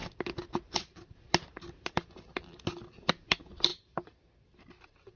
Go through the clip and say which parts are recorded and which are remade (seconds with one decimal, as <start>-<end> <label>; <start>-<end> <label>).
0.0-5.2 recorded